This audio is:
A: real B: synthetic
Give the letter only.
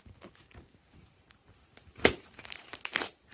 B